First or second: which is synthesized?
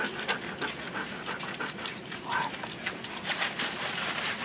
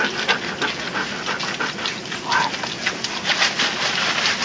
first